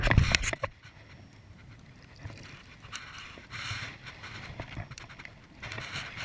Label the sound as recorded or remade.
remade